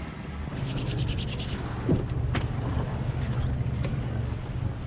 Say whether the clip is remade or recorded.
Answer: recorded